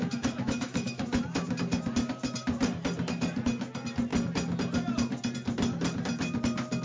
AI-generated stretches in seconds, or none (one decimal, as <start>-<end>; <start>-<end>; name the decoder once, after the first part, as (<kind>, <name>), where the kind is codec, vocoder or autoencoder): 0.0-1.2 (autoencoder, DAC-VAE)